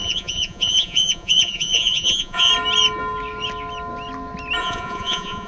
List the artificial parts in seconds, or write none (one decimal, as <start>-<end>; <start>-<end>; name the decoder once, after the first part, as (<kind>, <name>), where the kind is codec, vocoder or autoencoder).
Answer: 0.0-2.5 (vocoder, Vocos); 4.6-5.5